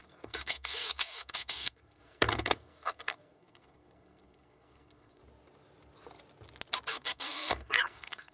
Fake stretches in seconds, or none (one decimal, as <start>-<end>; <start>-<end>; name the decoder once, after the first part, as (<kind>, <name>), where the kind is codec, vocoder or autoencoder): 0.0-5.2 (codec, SNAC); 6.9-8.3